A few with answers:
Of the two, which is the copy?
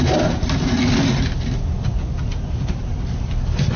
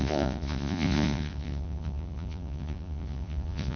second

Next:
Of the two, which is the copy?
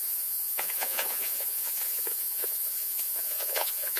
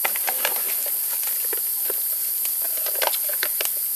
first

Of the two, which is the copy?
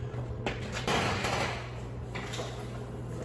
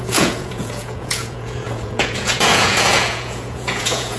second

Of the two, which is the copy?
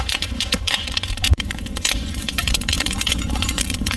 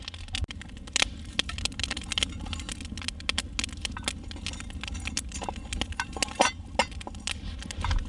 first